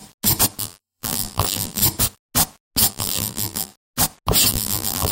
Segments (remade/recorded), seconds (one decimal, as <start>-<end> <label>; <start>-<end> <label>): 0.0-0.6 recorded; 0.6-1.8 remade; 1.8-2.9 recorded; 2.9-3.7 remade; 3.7-4.5 recorded; 4.5-5.1 remade